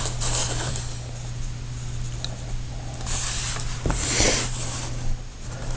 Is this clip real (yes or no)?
yes